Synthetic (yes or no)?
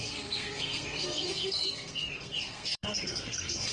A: yes